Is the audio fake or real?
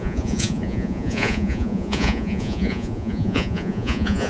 fake